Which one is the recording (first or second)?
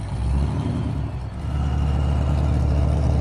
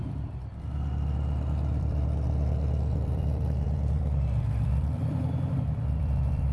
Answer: first